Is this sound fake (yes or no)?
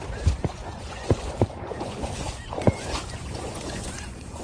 yes